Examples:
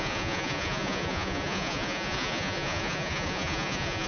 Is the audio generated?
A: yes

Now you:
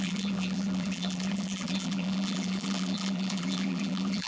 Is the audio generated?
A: yes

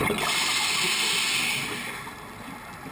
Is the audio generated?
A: no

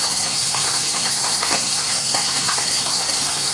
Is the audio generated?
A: yes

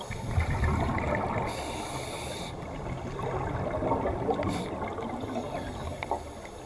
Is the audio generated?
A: no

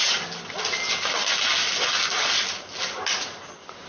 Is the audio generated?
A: no